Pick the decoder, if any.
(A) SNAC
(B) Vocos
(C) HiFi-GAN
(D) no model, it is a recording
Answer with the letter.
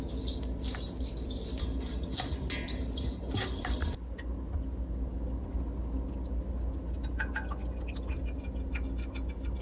D